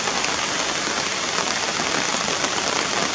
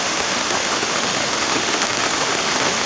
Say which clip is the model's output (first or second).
second